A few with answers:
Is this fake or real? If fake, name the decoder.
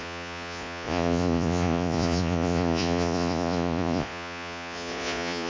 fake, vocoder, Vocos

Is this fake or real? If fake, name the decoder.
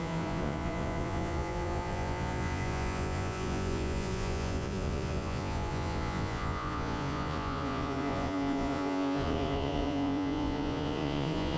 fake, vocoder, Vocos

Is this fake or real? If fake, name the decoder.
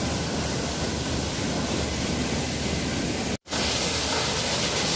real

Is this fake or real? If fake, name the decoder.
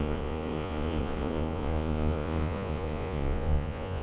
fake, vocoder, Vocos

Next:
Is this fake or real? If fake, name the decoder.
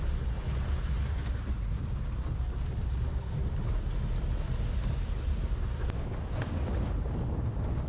real